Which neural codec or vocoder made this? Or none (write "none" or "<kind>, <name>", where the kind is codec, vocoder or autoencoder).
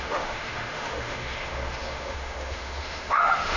autoencoder, DAC-VAE